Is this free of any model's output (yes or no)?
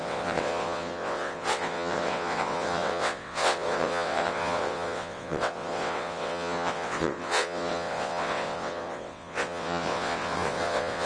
no